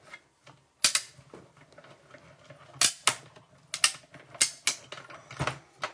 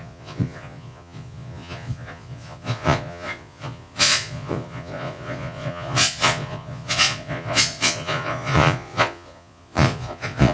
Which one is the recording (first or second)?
first